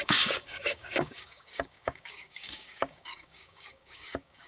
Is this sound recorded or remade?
remade